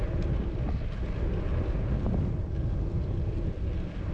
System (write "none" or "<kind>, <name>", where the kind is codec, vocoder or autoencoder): none